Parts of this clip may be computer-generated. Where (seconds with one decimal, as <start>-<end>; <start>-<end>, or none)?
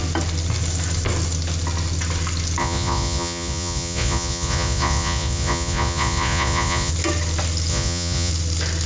2.6-6.9; 7.7-8.3